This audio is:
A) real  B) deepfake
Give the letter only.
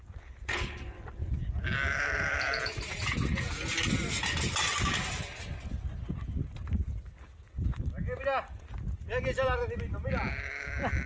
A